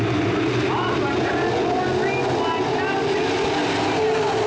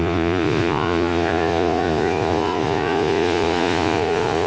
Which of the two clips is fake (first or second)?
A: second